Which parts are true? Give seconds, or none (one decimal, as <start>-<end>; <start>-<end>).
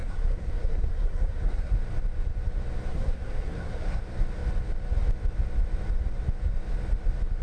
1.7-2.9; 4.0-7.4